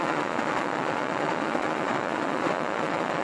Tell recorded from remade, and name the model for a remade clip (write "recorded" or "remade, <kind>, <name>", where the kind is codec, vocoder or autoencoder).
remade, vocoder, Vocos